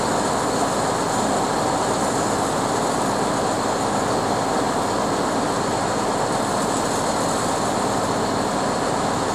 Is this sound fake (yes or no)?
no